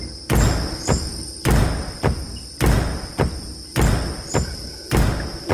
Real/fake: real